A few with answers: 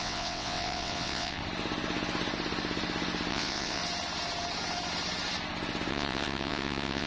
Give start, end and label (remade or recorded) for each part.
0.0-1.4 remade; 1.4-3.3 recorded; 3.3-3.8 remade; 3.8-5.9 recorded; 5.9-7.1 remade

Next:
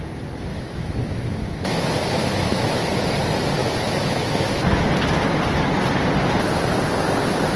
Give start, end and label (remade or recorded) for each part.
0.0-0.5 recorded; 0.5-2.9 remade; 2.9-3.6 recorded; 3.6-4.8 remade; 4.8-7.6 recorded